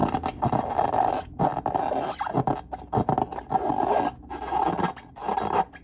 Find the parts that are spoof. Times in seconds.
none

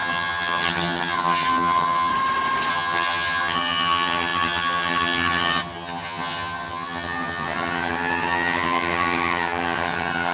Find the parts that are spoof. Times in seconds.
0.0-2.1; 2.7-10.3

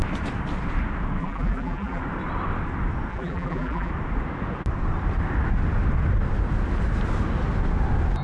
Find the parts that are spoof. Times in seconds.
1.2-2.0; 3.1-3.9

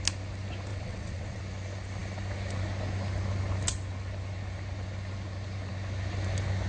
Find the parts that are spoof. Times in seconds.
0.7-1.4

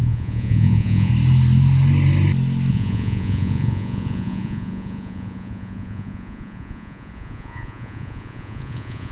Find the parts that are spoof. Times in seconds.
0.0-1.1; 2.7-9.1

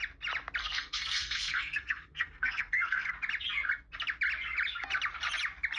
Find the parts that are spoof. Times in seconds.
0.6-3.1

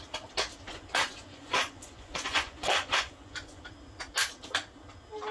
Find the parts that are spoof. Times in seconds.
0.7-3.6